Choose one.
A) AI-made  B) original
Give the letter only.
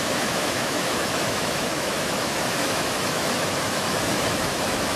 A